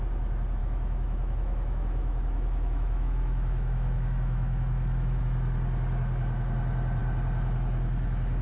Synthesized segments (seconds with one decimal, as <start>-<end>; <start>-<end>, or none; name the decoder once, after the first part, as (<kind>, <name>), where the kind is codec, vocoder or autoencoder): 0.6-5.2 (autoencoder, DAC-VAE)